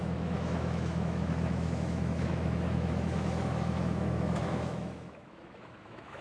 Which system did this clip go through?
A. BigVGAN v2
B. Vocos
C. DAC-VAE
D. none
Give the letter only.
C